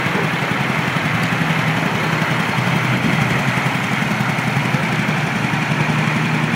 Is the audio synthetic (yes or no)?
no